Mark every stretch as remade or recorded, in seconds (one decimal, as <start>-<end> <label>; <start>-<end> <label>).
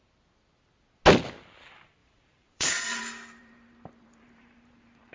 0.0-2.0 recorded; 2.0-5.1 remade